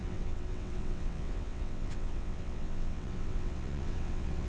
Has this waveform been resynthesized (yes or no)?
yes